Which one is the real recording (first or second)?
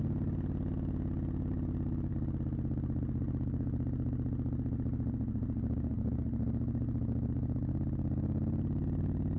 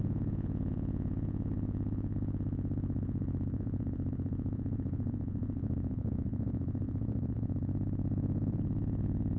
first